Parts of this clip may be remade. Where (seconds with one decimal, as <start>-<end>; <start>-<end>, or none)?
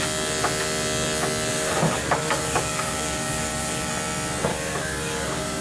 1.5-3.9; 4.5-5.6